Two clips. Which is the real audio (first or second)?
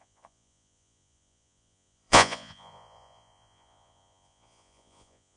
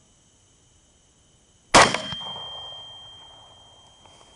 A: second